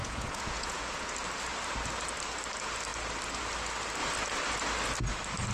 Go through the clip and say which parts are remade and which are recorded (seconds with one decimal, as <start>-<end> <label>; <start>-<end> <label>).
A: 0.0-1.1 remade; 1.1-5.5 recorded